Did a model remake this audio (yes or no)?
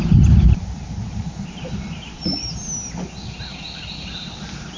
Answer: no